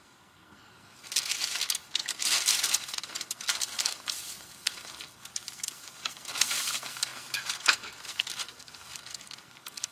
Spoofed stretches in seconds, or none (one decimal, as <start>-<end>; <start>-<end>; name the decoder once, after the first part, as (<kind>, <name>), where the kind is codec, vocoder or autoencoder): 0.0-9.9 (codec, SNAC)